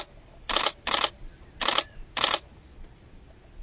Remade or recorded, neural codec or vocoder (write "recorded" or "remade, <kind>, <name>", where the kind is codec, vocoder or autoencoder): recorded